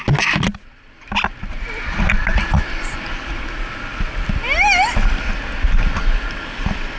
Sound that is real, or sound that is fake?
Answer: real